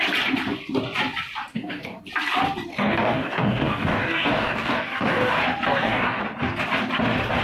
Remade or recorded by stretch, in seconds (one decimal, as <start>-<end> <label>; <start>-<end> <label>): 0.0-1.5 recorded; 1.5-2.0 remade; 2.0-2.7 recorded; 2.7-5.3 remade; 5.3-5.7 recorded; 5.7-6.2 remade; 6.2-7.4 recorded

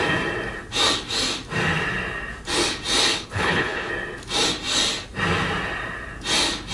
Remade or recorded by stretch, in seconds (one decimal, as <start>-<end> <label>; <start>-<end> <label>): 0.0-3.1 recorded; 3.1-3.9 remade; 3.9-6.7 recorded

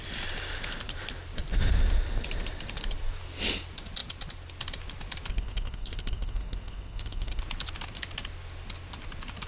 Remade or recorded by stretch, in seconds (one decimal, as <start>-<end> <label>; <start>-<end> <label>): 0.0-5.3 recorded; 5.3-7.4 remade; 7.4-9.5 recorded

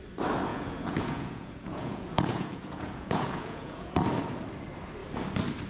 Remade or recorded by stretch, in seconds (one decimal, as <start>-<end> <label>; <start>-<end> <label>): 0.0-0.5 recorded; 0.5-3.9 remade; 3.9-5.7 recorded

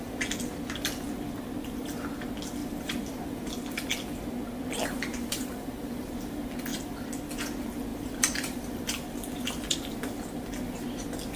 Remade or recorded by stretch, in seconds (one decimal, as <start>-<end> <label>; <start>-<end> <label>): 0.0-2.6 recorded; 2.6-3.5 remade; 3.5-5.1 recorded; 5.1-5.9 remade; 5.9-7.9 recorded; 7.9-8.7 remade; 8.7-11.4 recorded

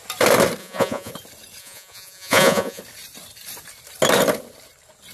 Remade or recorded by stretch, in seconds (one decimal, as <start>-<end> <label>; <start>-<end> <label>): 0.0-0.6 recorded; 0.6-1.1 remade; 1.1-1.6 recorded; 1.6-2.8 remade; 2.8-5.1 recorded